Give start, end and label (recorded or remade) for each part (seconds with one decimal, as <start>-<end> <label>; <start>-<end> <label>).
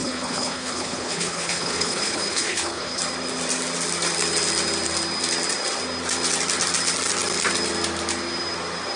0.0-3.0 remade; 3.0-9.0 recorded